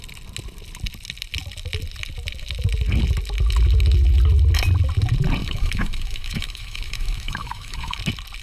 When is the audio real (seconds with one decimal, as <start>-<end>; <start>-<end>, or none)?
0.0-5.4; 8.0-8.4